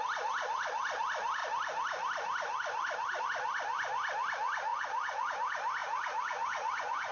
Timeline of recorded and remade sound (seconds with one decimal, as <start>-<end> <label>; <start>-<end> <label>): 0.0-4.7 recorded; 4.7-5.3 remade; 5.3-5.8 recorded; 5.8-7.1 remade